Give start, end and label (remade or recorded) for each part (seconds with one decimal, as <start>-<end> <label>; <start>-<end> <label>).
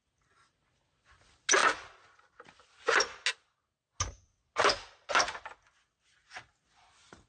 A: 0.0-7.3 recorded